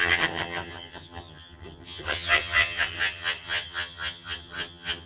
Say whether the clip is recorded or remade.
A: remade